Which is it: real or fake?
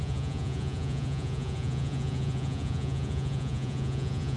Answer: fake